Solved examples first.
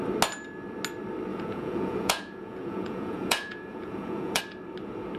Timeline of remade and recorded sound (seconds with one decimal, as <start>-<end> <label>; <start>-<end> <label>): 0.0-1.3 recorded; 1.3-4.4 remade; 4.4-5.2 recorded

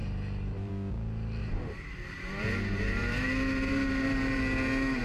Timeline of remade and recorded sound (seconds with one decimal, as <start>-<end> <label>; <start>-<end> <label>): 0.0-0.7 remade; 0.7-1.4 recorded; 1.4-4.4 remade; 4.4-5.0 recorded

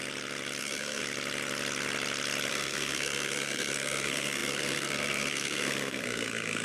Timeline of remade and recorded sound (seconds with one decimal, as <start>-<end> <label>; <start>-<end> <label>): 0.0-0.6 recorded; 0.6-1.0 remade; 1.0-2.5 recorded; 2.5-6.6 remade

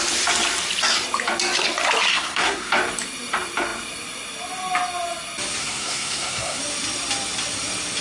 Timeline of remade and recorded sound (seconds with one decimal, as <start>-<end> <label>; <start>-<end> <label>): 0.0-2.1 recorded; 2.1-2.7 remade; 2.7-5.6 recorded; 5.6-6.6 remade; 6.6-8.0 recorded

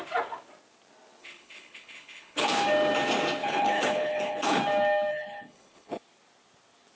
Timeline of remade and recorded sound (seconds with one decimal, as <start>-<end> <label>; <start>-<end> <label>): 0.0-1.2 recorded; 1.2-2.5 remade; 2.5-3.4 recorded; 3.4-4.6 remade; 4.6-5.1 recorded; 5.1-6.0 remade; 6.0-7.0 recorded

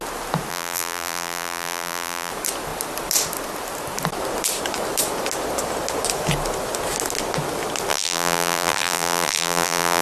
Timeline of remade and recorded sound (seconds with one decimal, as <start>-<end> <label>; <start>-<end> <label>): 0.0-0.5 recorded; 0.5-2.3 remade; 2.3-7.9 recorded; 7.9-10.0 remade

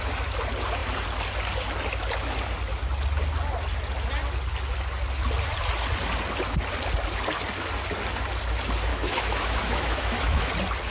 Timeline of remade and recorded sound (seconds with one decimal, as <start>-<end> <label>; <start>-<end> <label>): 0.0-8.9 recorded; 8.9-10.5 remade; 10.5-10.9 recorded

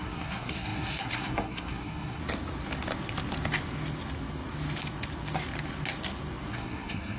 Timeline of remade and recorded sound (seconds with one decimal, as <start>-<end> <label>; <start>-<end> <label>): 0.0-2.2 remade; 2.2-6.5 recorded; 6.5-7.2 remade